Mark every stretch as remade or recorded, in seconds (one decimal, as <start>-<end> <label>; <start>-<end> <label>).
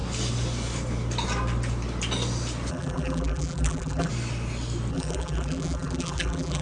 0.0-2.7 recorded; 2.7-4.1 remade; 4.1-4.9 recorded; 4.9-6.6 remade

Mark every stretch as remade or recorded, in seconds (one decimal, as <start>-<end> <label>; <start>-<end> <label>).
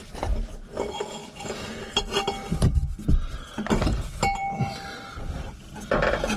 0.0-6.4 recorded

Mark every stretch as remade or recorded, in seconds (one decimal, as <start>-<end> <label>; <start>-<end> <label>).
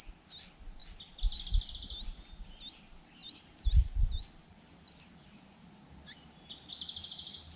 0.0-3.2 recorded; 3.2-6.7 remade; 6.7-7.6 recorded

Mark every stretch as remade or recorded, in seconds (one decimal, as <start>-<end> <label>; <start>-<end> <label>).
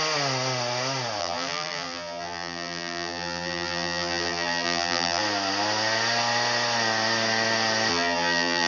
0.0-1.2 recorded; 1.2-5.2 remade; 5.2-7.9 recorded; 7.9-8.7 remade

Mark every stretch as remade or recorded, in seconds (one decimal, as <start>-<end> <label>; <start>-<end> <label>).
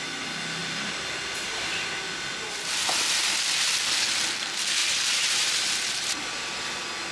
0.0-0.6 recorded; 0.6-1.6 remade; 1.6-4.8 recorded; 4.8-6.5 remade; 6.5-7.1 recorded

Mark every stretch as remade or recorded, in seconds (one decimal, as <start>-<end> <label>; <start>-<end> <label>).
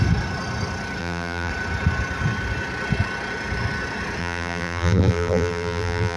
0.0-1.0 recorded; 1.0-1.5 remade; 1.5-4.2 recorded; 4.2-6.2 remade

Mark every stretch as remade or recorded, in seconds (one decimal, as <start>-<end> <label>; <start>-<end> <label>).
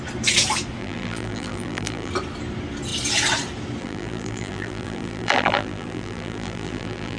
0.0-0.8 recorded; 0.8-2.1 remade; 2.1-3.8 recorded; 3.8-7.2 remade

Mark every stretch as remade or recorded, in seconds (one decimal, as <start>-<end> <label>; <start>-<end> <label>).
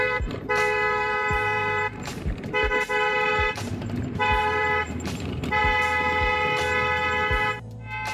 0.0-5.6 remade; 5.6-7.3 recorded; 7.3-8.1 remade